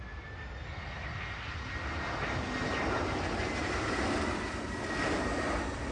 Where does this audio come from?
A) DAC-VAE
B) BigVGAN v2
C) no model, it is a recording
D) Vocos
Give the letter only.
C